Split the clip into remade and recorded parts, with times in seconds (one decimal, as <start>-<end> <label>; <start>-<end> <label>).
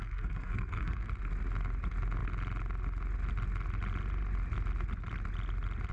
0.0-1.1 remade; 1.1-5.9 recorded